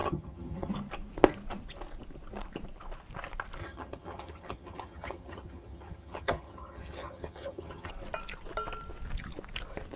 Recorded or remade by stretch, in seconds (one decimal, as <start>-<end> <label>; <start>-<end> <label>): 0.0-0.7 remade; 0.7-3.6 recorded; 3.6-7.9 remade; 7.9-10.0 recorded